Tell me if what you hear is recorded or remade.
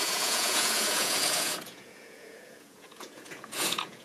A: remade